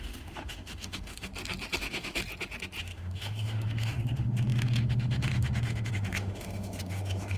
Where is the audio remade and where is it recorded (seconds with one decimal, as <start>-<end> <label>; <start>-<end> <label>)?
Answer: 0.0-1.3 remade; 1.3-1.8 recorded; 1.8-2.2 remade; 2.2-2.8 recorded; 2.8-7.4 remade